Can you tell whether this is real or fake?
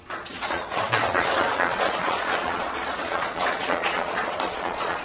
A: fake